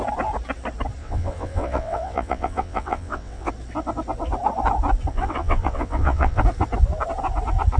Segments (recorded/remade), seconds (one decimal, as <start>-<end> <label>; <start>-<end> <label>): 0.0-1.0 recorded; 1.0-3.5 remade; 3.5-5.1 recorded; 5.1-6.4 remade; 6.4-7.8 recorded